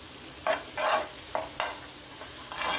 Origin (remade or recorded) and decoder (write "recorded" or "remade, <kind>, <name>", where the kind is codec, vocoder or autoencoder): recorded